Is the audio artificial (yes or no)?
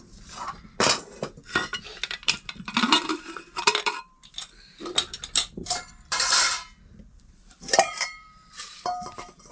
yes